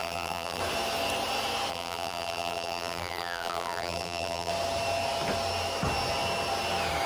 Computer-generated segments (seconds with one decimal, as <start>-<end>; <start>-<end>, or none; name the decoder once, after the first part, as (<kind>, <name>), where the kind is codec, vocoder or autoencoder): 0.0-0.6 (vocoder, BigVGAN v2); 1.7-4.5